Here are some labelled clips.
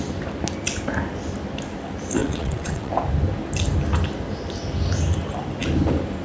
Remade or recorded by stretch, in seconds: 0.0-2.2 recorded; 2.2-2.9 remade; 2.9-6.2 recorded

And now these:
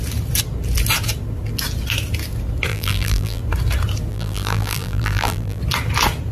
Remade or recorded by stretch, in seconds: 0.0-2.7 recorded; 2.7-3.4 remade; 3.4-4.1 recorded; 4.1-5.6 remade; 5.6-6.3 recorded

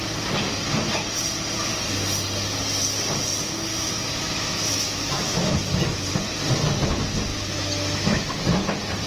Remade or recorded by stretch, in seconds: 0.0-3.7 recorded; 3.7-6.1 remade; 6.1-7.3 recorded; 7.3-8.4 remade; 8.4-9.1 recorded

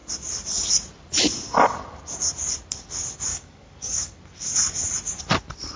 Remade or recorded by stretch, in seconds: 0.0-3.3 recorded; 3.3-4.2 remade; 4.2-5.8 recorded

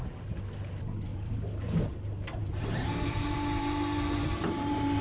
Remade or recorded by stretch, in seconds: 0.0-1.1 recorded; 1.1-1.8 remade; 1.8-2.4 recorded; 2.4-5.0 remade

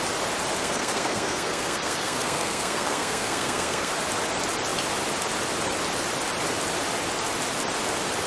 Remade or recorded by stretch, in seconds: 0.0-0.6 recorded; 0.6-3.9 remade; 3.9-8.3 recorded

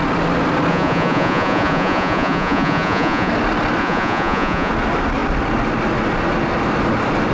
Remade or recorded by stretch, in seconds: 0.0-0.7 recorded; 0.7-3.3 remade; 3.3-3.8 recorded; 3.8-4.7 remade; 4.7-7.3 recorded